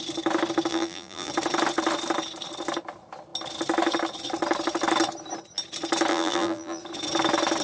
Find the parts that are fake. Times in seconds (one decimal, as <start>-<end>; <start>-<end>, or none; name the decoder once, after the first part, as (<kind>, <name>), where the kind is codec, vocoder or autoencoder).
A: 0.7-1.3 (vocoder, BigVGAN v2); 6.1-6.8